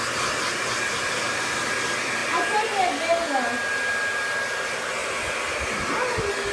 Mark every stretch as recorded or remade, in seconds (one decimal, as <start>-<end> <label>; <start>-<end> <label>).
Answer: 0.0-6.5 recorded